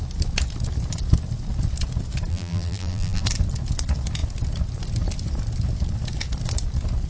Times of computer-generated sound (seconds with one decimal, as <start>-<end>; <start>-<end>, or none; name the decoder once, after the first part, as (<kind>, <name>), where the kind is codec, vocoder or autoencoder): 2.3-3.2 (vocoder, BigVGAN v2)